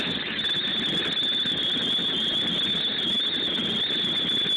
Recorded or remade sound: recorded